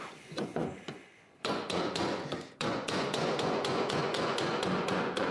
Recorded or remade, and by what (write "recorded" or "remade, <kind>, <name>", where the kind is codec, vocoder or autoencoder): remade, vocoder, Vocos